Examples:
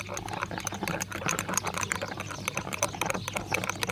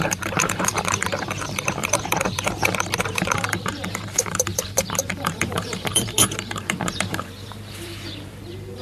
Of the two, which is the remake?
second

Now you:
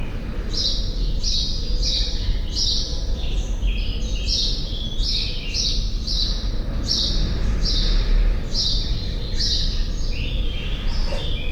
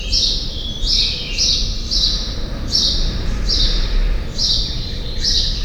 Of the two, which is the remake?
second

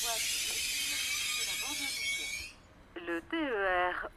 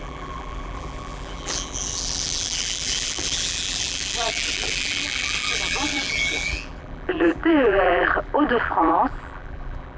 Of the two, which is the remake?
second